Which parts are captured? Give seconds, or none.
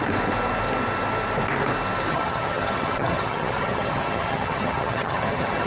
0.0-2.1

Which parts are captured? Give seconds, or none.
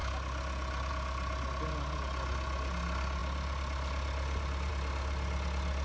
0.0-5.8